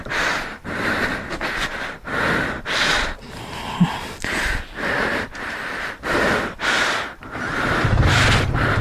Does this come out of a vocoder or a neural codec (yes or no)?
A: no